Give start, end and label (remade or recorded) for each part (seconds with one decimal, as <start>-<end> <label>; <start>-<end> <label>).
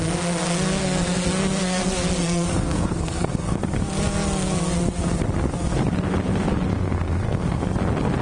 0.0-0.8 recorded; 0.8-1.8 remade; 1.8-2.2 recorded; 2.2-3.6 remade; 3.6-6.7 recorded; 6.7-7.6 remade; 7.6-8.2 recorded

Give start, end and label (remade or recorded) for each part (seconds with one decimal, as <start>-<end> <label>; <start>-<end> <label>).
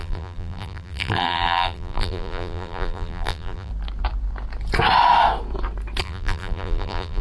0.0-3.7 remade; 3.7-6.0 recorded; 6.0-7.2 remade